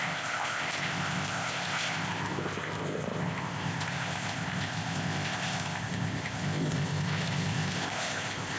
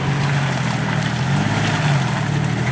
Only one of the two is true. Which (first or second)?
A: second